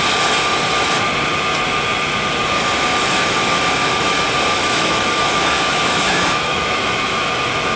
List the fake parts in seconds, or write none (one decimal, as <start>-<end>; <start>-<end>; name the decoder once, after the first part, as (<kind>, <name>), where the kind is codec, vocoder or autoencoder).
4.6-7.3 (autoencoder, DAC-VAE)

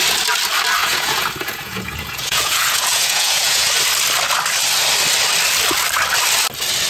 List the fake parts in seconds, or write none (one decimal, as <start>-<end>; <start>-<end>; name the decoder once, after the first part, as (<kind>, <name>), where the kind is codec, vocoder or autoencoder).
0.8-3.7 (vocoder, Vocos)

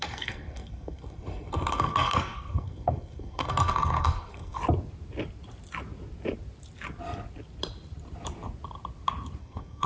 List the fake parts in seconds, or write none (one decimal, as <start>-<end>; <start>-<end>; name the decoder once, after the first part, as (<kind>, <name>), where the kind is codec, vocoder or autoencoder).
0.0-4.6 (codec, SNAC); 9.4-9.9

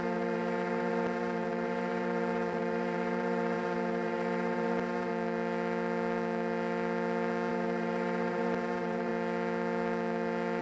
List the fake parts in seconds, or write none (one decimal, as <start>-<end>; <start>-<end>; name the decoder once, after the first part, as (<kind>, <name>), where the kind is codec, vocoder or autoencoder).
0.0-5.1 (vocoder, BigVGAN v2); 7.5-9.1

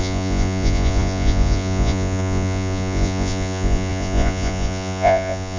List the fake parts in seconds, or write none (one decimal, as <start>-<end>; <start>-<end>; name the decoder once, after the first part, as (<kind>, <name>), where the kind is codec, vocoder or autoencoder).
0.0-5.6 (vocoder, Vocos)

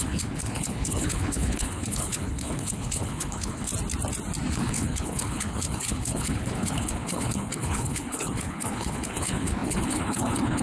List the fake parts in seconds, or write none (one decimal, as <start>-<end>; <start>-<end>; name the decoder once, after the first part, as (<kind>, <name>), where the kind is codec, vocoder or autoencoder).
0.0-3.7 (codec, HILCodec); 4.5-10.6

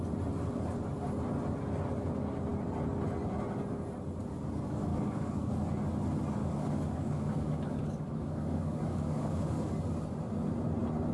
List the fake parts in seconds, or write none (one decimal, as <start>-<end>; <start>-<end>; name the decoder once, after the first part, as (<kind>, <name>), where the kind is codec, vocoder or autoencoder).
4.9-5.5 (codec, DAC); 6.4-9.7